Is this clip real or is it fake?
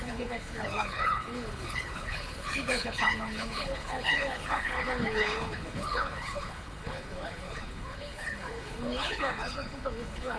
fake